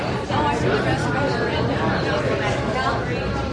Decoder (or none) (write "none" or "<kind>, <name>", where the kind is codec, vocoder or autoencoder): none